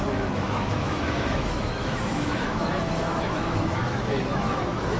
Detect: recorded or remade remade